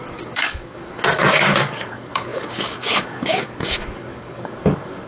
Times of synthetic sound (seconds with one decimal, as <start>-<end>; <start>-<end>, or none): 0.0-5.1